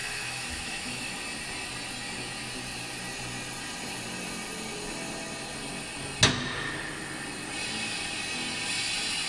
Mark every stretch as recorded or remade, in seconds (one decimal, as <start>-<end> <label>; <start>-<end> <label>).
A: 0.0-1.1 remade; 1.1-9.3 recorded